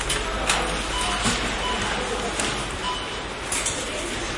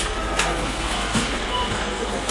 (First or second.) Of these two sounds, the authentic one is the first